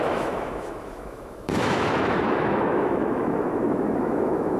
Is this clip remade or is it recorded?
remade